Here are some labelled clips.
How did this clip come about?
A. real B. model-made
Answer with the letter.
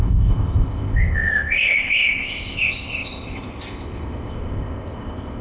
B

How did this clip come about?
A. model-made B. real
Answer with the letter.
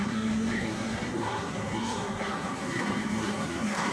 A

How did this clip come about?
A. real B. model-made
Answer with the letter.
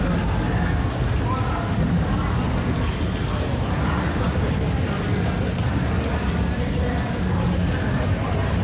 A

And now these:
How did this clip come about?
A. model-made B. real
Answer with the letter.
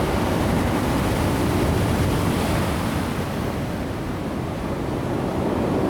B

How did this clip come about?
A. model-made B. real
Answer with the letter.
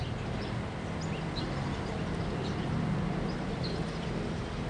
B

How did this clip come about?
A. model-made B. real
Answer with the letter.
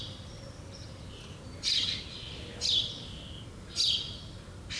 B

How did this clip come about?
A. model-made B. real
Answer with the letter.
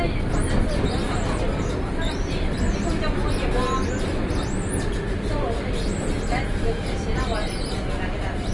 B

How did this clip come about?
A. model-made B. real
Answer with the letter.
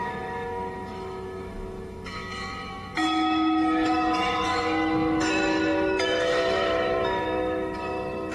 A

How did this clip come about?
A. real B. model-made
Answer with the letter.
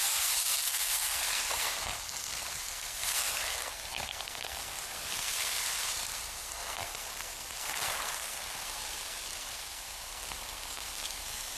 B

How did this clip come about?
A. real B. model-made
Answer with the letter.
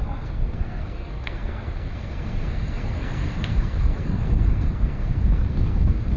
B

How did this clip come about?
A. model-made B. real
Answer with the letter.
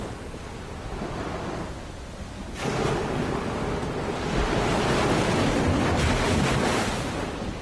B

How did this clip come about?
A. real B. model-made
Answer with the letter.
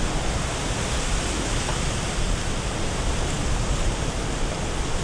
A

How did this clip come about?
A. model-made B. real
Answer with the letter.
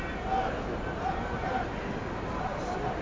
B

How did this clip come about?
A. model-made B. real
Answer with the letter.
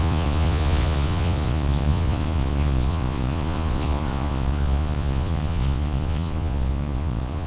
A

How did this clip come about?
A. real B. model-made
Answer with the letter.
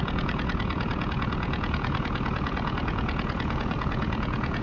B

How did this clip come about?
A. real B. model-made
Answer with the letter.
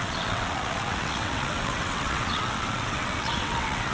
B